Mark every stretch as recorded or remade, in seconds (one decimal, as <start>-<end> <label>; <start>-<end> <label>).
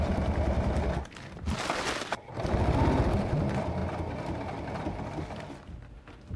0.0-3.8 remade; 3.8-4.6 recorded; 4.6-6.4 remade